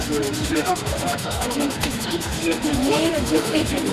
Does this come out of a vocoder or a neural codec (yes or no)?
yes